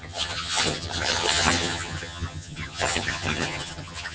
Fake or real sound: fake